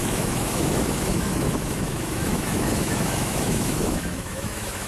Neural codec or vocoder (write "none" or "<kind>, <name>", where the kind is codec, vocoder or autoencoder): autoencoder, DAC-VAE